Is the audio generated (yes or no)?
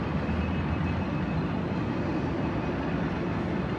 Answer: no